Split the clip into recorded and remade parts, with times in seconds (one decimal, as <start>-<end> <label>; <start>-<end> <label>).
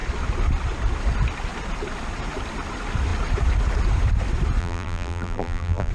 0.0-4.6 recorded; 4.6-5.9 remade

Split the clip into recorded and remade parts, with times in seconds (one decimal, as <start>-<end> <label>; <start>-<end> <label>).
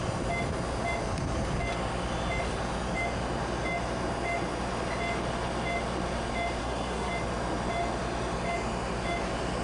0.0-6.6 recorded; 6.6-7.1 remade; 7.1-9.6 recorded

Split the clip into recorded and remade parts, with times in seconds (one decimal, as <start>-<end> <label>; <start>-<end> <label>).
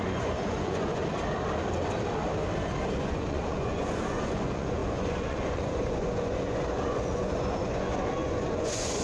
0.0-1.0 remade; 1.0-3.0 recorded; 3.0-9.0 remade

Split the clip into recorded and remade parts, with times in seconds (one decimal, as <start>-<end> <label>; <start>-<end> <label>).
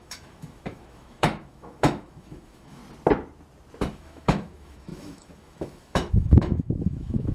0.0-2.8 remade; 2.8-3.9 recorded; 3.9-7.3 remade